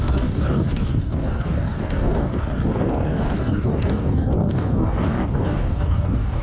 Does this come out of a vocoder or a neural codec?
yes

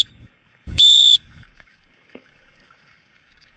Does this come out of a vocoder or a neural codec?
yes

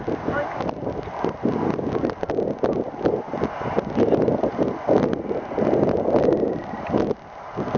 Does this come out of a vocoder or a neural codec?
no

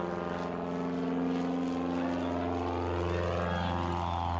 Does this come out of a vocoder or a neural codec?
no